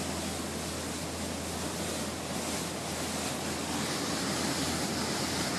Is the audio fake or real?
real